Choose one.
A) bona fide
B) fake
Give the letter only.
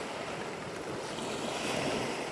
A